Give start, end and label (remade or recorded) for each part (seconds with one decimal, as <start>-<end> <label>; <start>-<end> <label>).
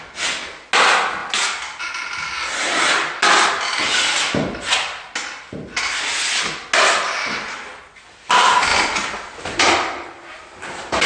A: 0.0-11.1 recorded